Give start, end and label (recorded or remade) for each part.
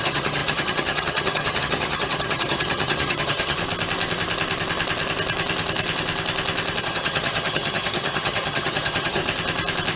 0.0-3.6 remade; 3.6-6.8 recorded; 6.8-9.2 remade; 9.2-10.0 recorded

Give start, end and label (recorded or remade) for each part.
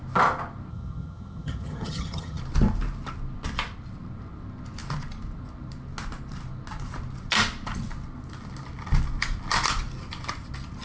0.0-0.7 recorded; 0.7-2.4 remade; 2.4-10.8 recorded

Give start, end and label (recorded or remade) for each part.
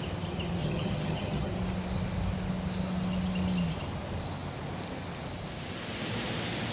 0.0-0.6 recorded; 0.6-1.5 remade; 1.5-6.7 recorded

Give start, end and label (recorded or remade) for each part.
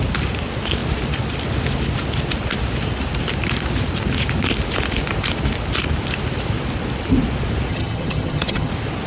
0.0-7.7 recorded; 7.7-8.7 remade; 8.7-9.1 recorded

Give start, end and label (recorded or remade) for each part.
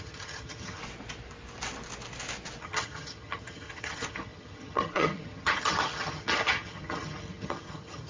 0.0-0.8 remade; 0.8-2.6 recorded; 2.6-8.1 remade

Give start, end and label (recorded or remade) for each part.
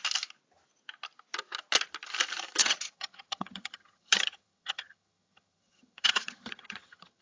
0.0-2.6 recorded; 2.6-7.2 remade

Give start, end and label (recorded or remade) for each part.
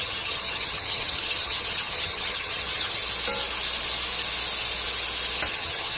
0.0-3.0 remade; 3.0-5.5 recorded; 5.5-6.0 remade